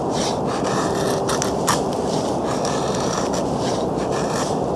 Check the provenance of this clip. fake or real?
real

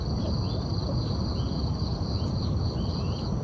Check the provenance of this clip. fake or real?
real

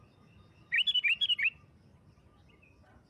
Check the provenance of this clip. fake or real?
real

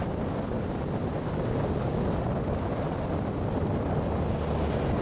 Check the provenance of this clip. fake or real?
real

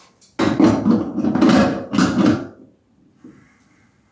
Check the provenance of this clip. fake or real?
real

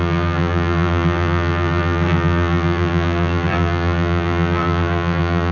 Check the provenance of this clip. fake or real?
fake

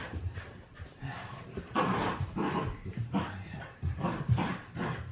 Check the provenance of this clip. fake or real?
fake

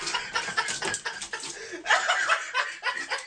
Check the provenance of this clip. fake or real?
real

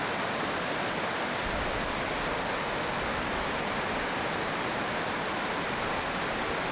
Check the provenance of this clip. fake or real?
real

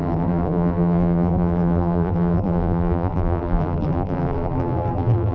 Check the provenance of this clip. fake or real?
fake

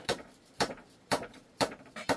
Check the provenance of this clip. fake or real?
fake